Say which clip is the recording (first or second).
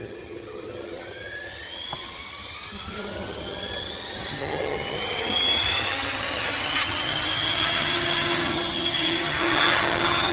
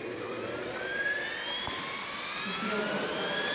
second